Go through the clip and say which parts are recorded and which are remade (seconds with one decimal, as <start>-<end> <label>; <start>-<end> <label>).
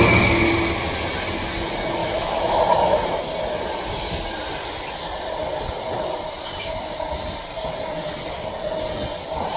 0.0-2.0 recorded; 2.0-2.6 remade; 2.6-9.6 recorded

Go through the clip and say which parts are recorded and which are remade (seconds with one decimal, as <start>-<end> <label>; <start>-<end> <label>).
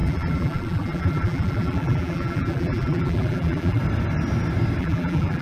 0.0-3.8 remade; 3.8-4.8 recorded; 4.8-5.4 remade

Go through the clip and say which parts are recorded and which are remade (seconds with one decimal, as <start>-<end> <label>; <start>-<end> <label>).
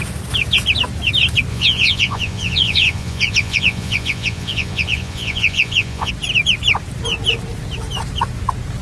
0.0-1.5 recorded; 1.5-6.1 remade; 6.1-8.8 recorded